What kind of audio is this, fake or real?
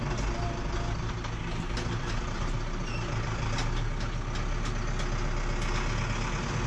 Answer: real